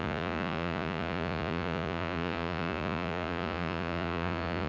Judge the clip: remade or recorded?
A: remade